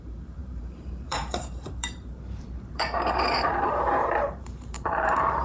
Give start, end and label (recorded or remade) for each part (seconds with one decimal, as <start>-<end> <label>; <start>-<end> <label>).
0.0-5.4 remade